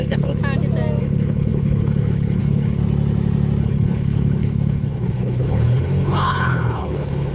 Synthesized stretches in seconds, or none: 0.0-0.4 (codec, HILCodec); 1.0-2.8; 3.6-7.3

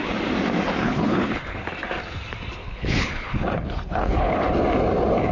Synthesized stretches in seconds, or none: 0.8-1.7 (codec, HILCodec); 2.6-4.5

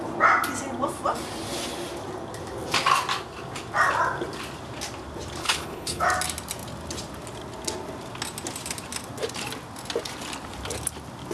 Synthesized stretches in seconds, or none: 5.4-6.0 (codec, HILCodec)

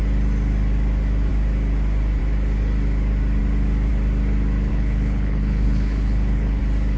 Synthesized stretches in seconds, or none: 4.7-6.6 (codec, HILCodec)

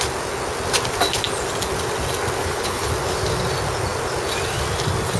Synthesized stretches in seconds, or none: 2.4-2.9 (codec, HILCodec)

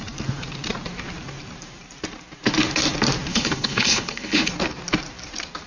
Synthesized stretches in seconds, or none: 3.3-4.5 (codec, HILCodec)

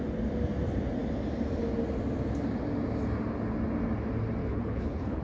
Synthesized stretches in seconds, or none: 4.4-5.2 (codec, HILCodec)

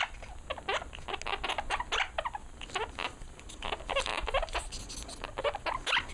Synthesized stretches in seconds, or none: none